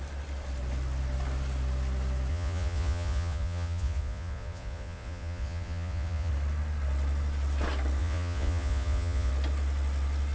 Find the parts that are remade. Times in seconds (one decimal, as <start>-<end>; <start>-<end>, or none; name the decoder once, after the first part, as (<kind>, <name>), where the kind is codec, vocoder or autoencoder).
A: 2.3-6.3 (vocoder, Vocos); 8.0-9.3